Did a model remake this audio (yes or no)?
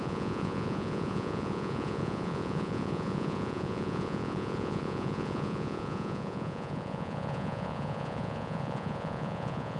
yes